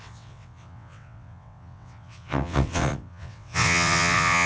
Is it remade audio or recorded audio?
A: remade